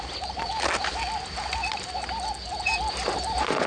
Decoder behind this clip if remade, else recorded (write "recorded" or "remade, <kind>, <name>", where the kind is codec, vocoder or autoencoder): recorded